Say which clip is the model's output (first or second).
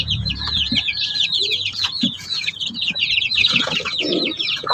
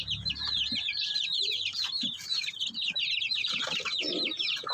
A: first